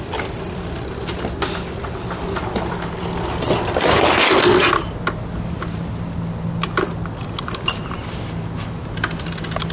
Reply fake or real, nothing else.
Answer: real